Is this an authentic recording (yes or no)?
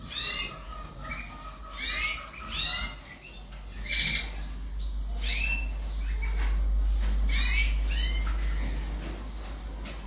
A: yes